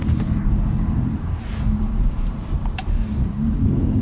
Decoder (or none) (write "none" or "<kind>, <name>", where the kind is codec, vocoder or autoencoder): vocoder, BigVGAN v2